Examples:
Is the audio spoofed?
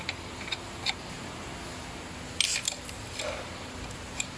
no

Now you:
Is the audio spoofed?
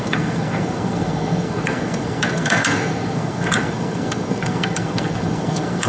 yes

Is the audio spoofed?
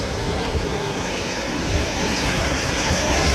yes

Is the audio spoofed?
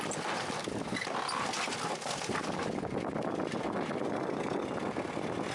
no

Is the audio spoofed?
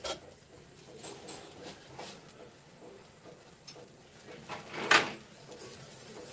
no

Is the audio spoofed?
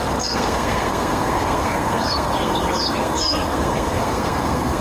yes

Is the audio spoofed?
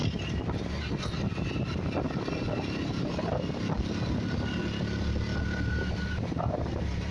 no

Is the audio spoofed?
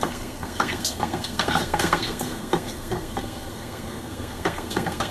yes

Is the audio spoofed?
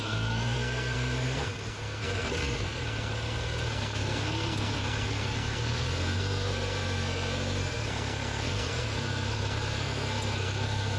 yes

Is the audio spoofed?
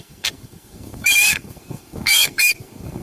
yes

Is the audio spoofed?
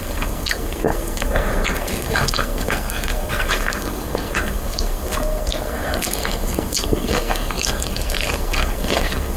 yes